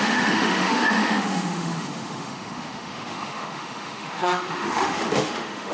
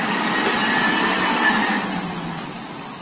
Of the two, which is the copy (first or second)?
first